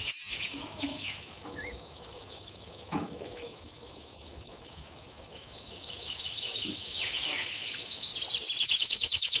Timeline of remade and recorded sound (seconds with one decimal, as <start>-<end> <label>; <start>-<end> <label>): 0.0-8.1 remade; 8.1-8.6 recorded; 8.6-9.4 remade